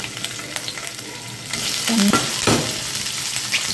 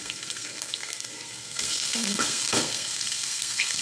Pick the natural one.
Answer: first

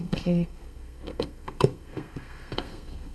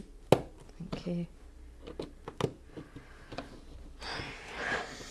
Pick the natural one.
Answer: second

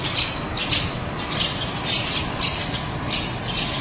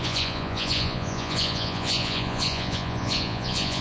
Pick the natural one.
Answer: first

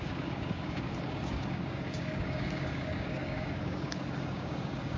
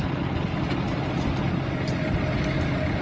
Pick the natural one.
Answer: second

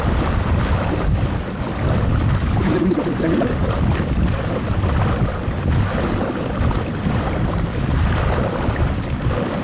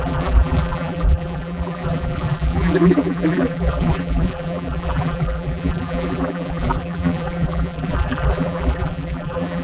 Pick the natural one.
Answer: first